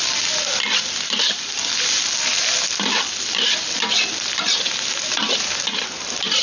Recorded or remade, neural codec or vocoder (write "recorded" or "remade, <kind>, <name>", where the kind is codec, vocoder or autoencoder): recorded